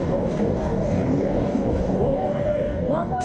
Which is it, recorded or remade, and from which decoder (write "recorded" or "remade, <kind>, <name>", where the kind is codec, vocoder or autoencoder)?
remade, codec, DAC